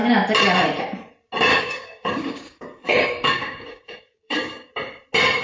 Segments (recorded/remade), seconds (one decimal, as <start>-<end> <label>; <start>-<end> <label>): 0.0-1.5 recorded; 1.5-4.7 remade; 4.7-5.4 recorded